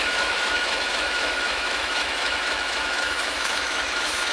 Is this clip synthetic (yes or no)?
yes